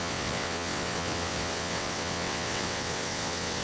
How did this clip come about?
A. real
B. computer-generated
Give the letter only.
B